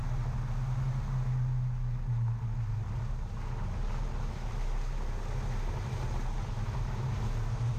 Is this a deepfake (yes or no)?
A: no